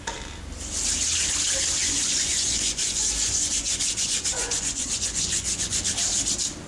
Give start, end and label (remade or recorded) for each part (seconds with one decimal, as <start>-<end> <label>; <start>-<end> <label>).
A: 0.0-1.8 recorded; 1.8-5.8 remade; 5.8-6.7 recorded